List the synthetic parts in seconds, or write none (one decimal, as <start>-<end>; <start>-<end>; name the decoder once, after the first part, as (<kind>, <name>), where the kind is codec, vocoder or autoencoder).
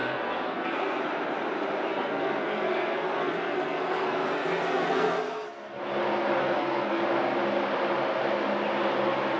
0.0-1.0 (codec, SNAC); 1.9-5.8; 6.4-7.0